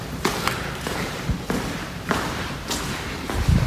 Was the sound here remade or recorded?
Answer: recorded